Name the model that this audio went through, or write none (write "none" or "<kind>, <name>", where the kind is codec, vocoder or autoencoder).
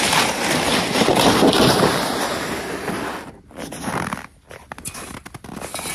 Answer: none